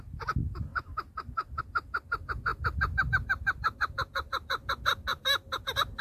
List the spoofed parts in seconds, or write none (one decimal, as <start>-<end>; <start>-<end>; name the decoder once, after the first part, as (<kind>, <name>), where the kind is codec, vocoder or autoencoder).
0.7-1.6 (vocoder, BigVGAN v2); 2.5-3.1; 5.1-5.6